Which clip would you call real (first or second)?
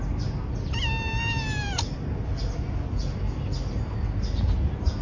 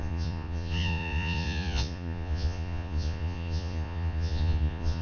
first